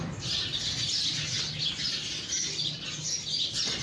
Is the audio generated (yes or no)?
no